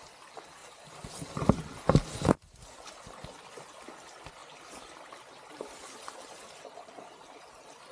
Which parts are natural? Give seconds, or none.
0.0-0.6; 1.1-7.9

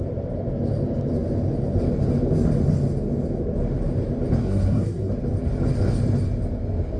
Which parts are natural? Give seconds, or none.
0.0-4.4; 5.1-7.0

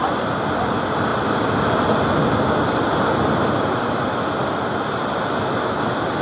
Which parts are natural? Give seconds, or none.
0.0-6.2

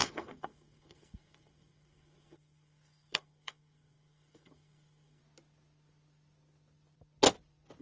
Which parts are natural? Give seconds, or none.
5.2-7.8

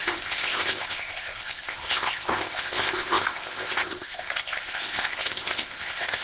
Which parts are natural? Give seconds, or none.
none

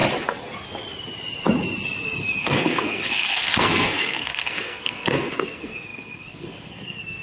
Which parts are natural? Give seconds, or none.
0.0-2.4

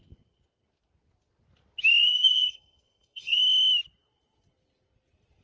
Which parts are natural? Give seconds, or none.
0.0-2.0; 3.4-5.4

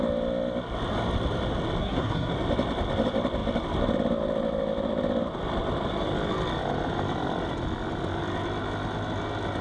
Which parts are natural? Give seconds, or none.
0.0-1.8; 2.3-9.6